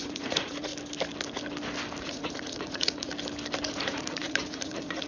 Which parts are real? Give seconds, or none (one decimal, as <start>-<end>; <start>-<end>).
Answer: 0.7-2.0; 3.1-3.7